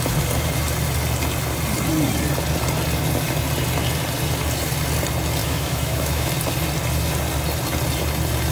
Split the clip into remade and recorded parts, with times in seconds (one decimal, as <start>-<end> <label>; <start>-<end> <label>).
0.0-5.4 recorded; 5.4-6.3 remade; 6.3-8.5 recorded